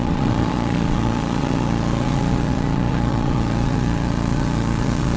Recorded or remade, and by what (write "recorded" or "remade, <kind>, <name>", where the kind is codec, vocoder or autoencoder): remade, vocoder, Vocos